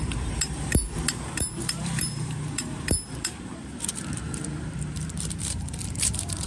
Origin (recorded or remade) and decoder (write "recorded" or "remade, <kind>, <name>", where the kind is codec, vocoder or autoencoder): remade, vocoder, BigVGAN v2